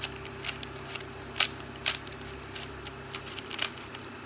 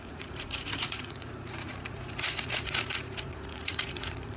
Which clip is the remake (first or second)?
second